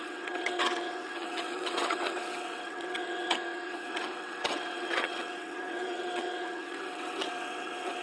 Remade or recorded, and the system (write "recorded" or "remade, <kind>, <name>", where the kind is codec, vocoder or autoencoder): remade, vocoder, WaveNeXt